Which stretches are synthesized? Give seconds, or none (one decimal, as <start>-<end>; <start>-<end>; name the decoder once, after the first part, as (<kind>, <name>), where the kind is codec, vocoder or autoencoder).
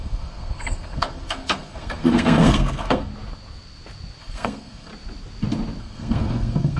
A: 0.0-3.1 (codec, SNAC); 4.2-4.9; 5.8-6.8